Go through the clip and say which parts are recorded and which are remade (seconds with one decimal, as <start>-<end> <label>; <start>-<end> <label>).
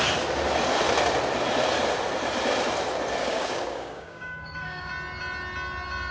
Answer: 0.0-3.2 recorded; 3.2-4.9 remade; 4.9-6.1 recorded